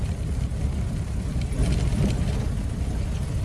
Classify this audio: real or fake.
real